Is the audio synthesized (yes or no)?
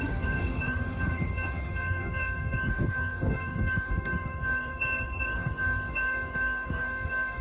yes